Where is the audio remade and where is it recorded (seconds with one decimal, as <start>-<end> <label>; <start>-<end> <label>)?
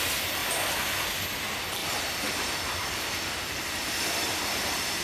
0.0-0.4 recorded; 0.4-1.1 remade; 1.1-1.8 recorded; 1.8-5.0 remade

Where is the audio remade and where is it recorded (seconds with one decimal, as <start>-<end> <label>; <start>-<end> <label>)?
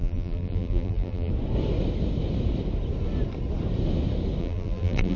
0.0-1.3 remade; 1.3-4.4 recorded; 4.4-5.2 remade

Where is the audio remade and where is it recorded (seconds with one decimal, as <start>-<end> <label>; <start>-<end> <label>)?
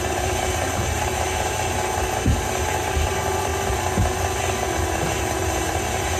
0.0-3.5 remade; 3.5-5.1 recorded; 5.1-6.2 remade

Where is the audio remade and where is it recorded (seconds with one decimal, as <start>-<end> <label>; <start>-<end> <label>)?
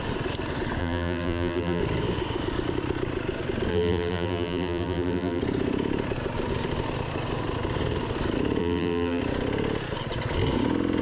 0.0-0.8 recorded; 0.8-1.8 remade; 1.8-3.7 recorded; 3.7-5.4 remade; 5.4-8.6 recorded; 8.6-9.2 remade; 9.2-11.0 recorded